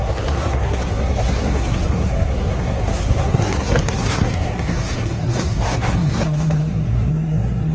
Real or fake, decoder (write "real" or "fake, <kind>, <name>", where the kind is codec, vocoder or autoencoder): fake, codec, SNAC